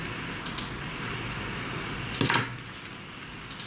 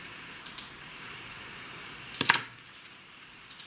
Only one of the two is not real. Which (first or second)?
second